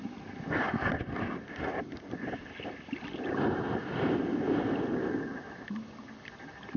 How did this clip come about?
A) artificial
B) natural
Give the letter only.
B